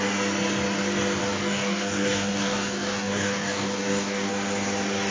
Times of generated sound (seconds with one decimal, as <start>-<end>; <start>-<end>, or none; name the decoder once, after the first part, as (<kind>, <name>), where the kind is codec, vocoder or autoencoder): 1.2-4.3 (codec, DAC)